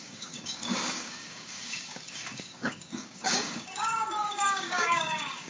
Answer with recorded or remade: remade